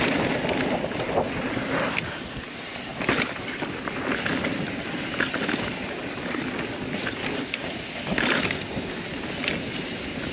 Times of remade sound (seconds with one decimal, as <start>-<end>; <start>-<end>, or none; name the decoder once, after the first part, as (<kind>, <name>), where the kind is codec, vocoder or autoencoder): 2.9-4.0 (vocoder, BigVGAN v2)